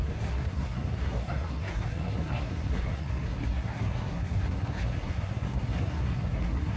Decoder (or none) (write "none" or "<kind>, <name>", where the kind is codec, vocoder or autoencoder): codec, SNAC